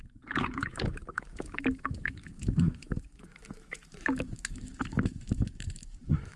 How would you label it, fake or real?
fake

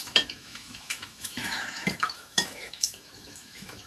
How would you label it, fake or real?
fake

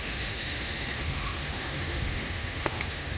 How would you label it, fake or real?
fake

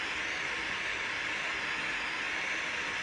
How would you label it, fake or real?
real